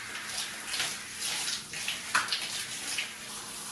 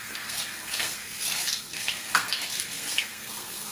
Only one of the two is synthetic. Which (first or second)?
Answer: second